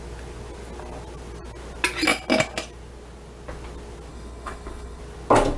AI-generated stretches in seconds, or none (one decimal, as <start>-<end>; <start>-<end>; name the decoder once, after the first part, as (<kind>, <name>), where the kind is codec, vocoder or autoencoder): 4.1-5.0 (codec, HILCodec)